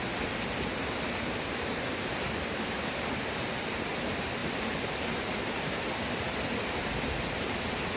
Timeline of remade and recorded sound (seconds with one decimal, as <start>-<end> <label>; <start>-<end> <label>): 0.0-4.4 recorded; 4.4-5.1 remade; 5.1-8.0 recorded